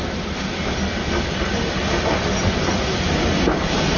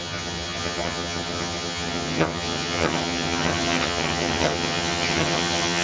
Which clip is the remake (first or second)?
second